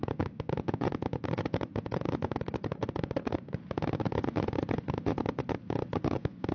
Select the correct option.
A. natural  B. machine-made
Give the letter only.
A